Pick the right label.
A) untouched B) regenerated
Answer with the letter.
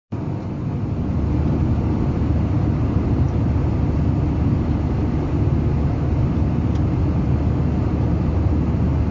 A